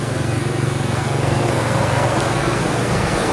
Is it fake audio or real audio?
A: fake